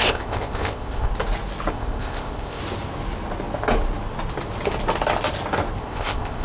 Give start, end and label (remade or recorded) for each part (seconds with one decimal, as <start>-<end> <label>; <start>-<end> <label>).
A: 0.0-1.1 remade; 1.1-1.7 recorded; 1.7-2.6 remade; 2.6-5.8 recorded; 5.8-6.4 remade